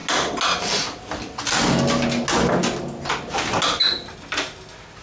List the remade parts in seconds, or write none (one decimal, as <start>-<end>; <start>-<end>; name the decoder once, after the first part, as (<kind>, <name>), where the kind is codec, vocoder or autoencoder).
none